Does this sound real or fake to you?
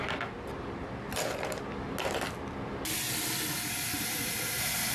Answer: real